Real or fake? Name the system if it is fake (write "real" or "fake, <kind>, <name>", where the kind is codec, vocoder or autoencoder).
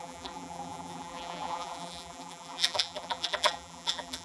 fake, vocoder, BigVGAN v2